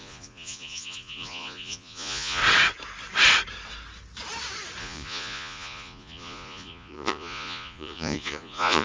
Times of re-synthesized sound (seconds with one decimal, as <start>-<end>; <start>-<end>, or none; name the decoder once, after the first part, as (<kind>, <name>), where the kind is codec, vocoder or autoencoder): 0.0-2.4 (vocoder, Vocos); 4.8-8.8